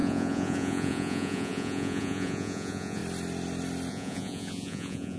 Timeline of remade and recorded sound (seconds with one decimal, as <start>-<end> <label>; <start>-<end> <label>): 0.0-3.0 remade; 3.0-3.9 recorded; 3.9-5.2 remade